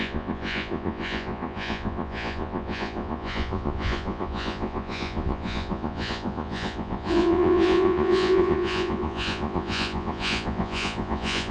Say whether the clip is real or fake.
fake